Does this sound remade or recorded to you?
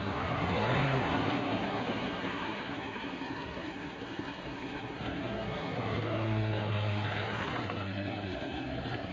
remade